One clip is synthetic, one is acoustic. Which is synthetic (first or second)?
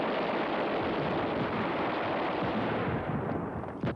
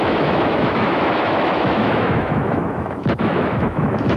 second